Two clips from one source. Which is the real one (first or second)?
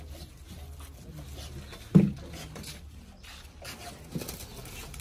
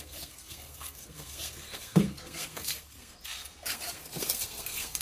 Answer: first